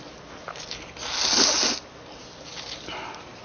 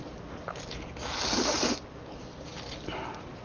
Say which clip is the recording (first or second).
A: first